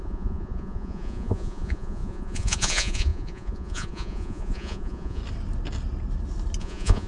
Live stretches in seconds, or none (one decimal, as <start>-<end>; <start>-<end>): 5.2-6.6

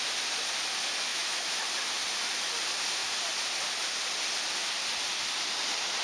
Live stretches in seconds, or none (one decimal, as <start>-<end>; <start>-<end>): 0.0-1.1; 1.6-6.0

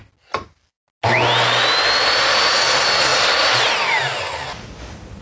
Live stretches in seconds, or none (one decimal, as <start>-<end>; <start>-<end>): 0.0-5.2

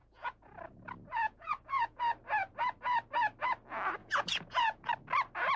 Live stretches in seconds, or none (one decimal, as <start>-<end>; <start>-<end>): 2.0-4.0; 4.9-5.6

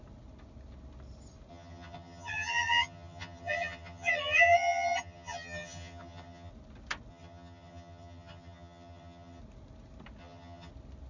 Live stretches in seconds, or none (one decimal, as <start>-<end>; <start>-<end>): 0.0-1.5; 6.5-7.1; 9.4-10.2; 10.7-11.1

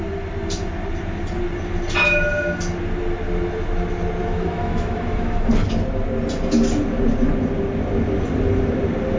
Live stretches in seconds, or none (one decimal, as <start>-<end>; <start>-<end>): 0.0-4.2; 5.5-9.2